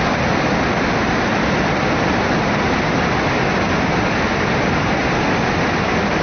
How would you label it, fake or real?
real